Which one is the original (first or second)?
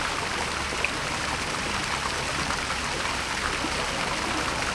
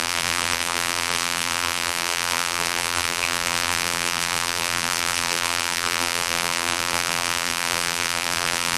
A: first